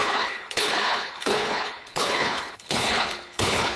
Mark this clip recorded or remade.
remade